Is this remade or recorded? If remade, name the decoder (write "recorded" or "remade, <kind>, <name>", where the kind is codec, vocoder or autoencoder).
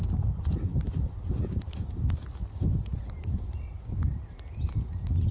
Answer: recorded